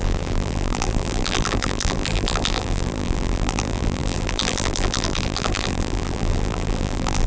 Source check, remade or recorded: remade